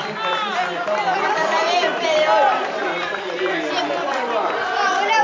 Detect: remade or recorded recorded